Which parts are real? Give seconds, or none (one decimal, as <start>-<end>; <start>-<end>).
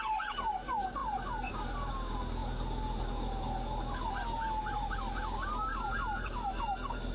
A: 0.0-7.1